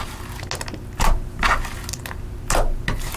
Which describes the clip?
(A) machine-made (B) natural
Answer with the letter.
B